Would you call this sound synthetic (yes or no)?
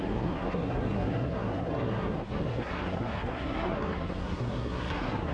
yes